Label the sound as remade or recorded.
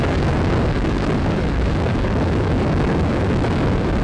remade